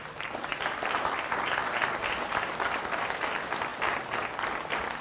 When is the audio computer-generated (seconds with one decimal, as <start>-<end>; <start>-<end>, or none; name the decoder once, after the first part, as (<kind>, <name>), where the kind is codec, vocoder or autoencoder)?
none